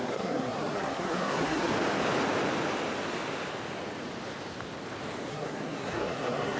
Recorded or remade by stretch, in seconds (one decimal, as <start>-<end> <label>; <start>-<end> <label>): 0.0-1.7 remade; 1.7-5.3 recorded; 5.3-6.6 remade